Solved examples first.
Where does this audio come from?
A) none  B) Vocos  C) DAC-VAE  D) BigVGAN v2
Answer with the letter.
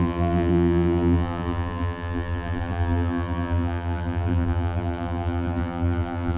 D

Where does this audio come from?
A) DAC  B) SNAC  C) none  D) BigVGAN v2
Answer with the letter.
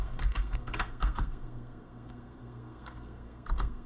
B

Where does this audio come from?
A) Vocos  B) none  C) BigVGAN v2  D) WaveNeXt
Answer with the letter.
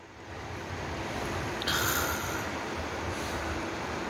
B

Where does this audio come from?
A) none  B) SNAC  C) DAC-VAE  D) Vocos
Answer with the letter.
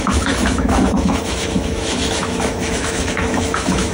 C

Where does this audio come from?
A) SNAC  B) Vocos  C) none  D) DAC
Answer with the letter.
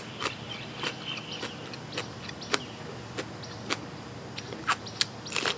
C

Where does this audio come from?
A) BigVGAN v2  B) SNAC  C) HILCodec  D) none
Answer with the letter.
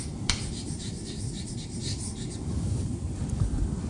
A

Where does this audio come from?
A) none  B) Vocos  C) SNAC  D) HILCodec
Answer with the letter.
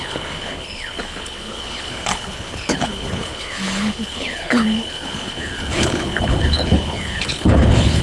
D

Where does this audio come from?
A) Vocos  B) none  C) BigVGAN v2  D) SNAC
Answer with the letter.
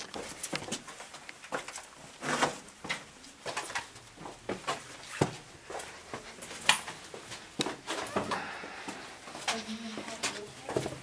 B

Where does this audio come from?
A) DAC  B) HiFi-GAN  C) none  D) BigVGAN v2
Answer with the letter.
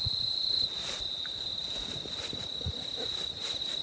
C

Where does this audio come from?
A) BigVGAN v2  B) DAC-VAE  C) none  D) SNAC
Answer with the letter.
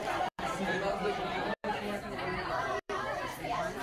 A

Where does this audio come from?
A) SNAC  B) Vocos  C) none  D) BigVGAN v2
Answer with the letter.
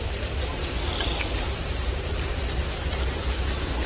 C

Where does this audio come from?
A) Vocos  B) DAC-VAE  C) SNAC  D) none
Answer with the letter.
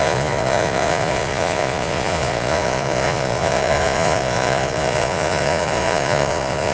A